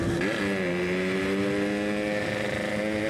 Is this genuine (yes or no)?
yes